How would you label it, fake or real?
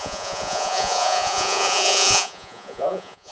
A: fake